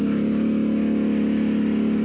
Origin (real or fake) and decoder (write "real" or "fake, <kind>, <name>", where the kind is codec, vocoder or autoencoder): real